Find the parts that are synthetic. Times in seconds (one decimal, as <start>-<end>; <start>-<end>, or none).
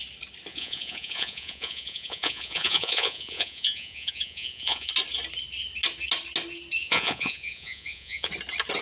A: 0.5-4.9; 6.8-8.3